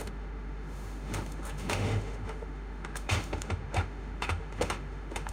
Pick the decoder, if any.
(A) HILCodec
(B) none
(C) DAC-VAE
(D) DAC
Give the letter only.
C